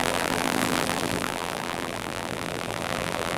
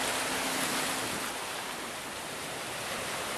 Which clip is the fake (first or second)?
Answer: first